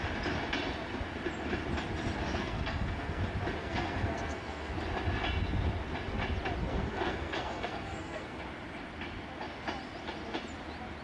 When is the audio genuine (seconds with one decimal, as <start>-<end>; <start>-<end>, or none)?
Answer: 0.0-2.3; 3.2-3.6; 4.7-6.6; 8.4-11.0